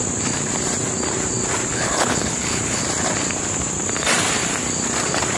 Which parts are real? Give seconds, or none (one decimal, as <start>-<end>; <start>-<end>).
0.0-1.7; 2.8-5.4